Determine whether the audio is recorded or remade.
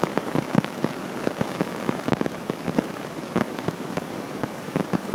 remade